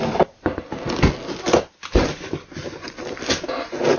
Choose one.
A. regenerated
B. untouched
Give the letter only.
B